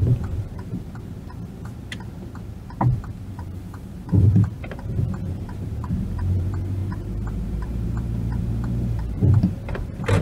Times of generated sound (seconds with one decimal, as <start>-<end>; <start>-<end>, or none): 0.0-0.7; 3.0-10.2